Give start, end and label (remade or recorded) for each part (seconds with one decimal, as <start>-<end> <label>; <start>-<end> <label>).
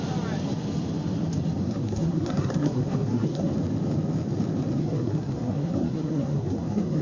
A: 0.0-1.6 recorded; 1.6-3.5 remade; 3.5-4.8 recorded; 4.8-7.0 remade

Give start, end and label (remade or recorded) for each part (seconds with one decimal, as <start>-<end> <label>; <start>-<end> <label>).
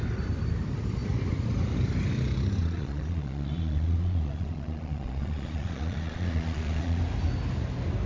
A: 0.0-2.6 recorded; 2.6-7.0 remade; 7.0-8.1 recorded